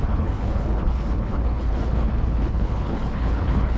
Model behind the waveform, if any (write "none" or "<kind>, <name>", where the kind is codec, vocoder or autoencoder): codec, HILCodec